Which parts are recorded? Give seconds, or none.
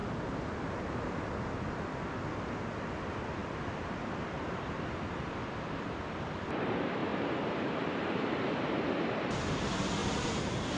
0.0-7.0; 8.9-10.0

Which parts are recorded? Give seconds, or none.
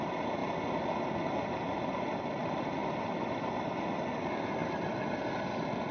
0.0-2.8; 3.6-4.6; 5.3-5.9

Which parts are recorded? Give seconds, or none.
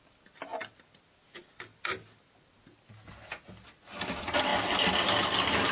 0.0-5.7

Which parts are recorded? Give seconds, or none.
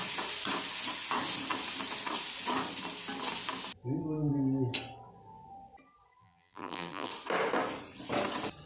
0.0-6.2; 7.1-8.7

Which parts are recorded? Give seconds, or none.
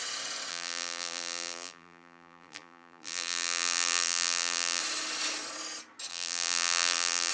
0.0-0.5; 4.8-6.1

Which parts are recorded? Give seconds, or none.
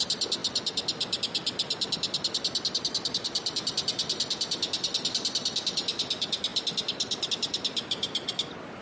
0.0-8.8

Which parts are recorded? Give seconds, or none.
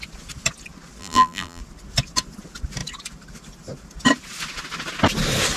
0.0-1.0; 1.6-5.6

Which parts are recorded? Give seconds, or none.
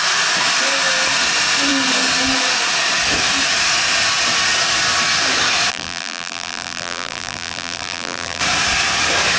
0.0-5.7; 8.4-9.4